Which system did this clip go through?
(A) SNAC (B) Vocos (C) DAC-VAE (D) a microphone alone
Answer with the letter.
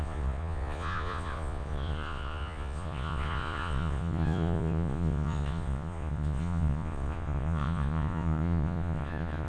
B